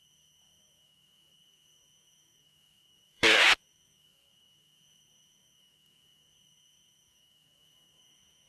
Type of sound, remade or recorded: remade